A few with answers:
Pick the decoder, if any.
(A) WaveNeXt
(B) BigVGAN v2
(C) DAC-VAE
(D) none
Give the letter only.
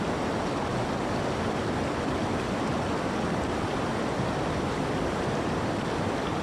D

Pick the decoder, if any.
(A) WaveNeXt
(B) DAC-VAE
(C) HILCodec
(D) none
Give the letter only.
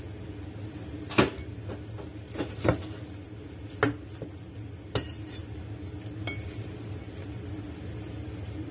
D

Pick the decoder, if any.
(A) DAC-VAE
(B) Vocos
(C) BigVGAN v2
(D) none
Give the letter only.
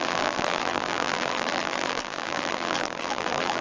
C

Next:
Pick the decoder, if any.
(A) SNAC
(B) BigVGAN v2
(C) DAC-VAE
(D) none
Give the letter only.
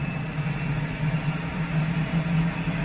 D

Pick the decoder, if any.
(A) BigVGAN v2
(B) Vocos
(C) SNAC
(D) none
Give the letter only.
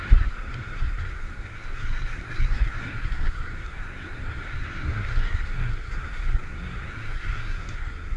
C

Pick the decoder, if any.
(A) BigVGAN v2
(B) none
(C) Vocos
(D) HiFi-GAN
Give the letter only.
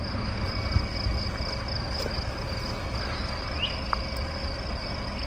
B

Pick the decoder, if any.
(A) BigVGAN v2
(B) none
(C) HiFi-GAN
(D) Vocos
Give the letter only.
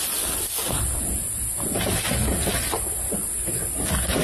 B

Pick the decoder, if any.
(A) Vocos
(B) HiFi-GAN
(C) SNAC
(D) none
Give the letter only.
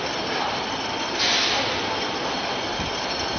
D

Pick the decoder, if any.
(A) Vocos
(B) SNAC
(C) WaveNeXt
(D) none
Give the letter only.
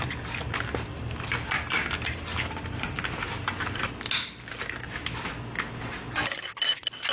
D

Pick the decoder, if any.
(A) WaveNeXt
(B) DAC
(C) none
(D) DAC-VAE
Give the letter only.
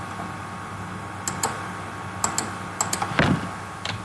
C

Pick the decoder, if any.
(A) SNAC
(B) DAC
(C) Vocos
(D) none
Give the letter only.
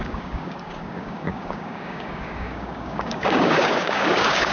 B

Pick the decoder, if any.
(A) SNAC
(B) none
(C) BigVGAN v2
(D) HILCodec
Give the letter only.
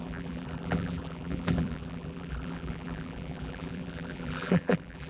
C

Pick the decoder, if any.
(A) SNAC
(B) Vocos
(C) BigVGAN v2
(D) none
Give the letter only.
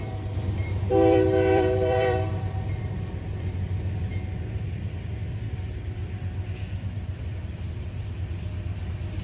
C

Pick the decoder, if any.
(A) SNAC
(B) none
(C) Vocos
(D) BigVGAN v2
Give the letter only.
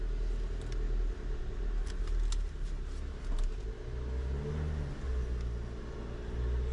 B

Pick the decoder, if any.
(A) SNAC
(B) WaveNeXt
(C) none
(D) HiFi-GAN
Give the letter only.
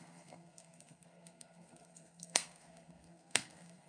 A